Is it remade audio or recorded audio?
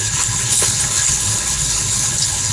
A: remade